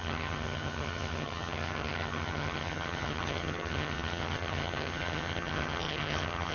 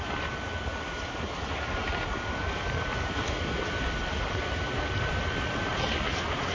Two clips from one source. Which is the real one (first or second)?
second